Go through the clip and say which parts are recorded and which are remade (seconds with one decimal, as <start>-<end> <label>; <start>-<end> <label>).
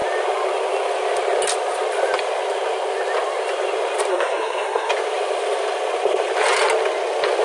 0.0-4.1 recorded; 4.1-4.9 remade; 4.9-7.4 recorded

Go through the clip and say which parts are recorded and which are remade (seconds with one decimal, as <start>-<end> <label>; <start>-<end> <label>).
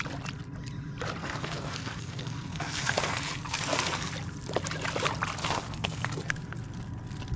0.0-1.2 recorded; 1.2-4.1 remade; 4.1-5.4 recorded; 5.4-6.3 remade; 6.3-7.4 recorded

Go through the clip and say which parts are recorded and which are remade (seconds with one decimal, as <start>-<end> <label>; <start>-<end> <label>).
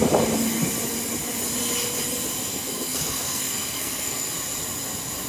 0.0-2.5 recorded; 2.5-4.3 remade; 4.3-5.3 recorded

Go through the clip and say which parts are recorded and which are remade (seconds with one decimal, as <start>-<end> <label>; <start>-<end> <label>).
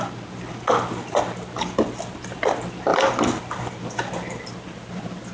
0.0-5.3 recorded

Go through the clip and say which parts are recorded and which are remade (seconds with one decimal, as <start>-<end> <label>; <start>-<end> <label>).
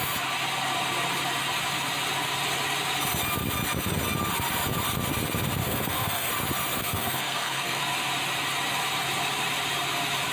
0.0-5.6 recorded; 5.6-6.3 remade; 6.3-6.8 recorded; 6.8-7.8 remade; 7.8-10.3 recorded